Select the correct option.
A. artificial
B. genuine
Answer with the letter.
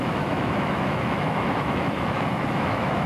A